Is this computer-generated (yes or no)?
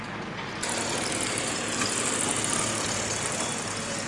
no